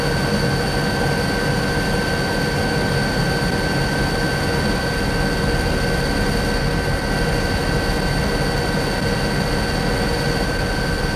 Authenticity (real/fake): real